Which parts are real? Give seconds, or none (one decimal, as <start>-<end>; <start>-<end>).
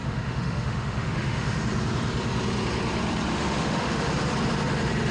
1.6-3.3; 4.1-5.1